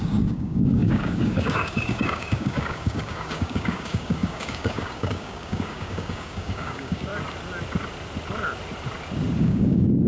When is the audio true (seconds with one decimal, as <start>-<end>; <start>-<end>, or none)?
7.1-9.4